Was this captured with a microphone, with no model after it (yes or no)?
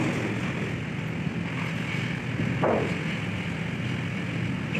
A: yes